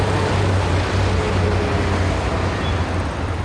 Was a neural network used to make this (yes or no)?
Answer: no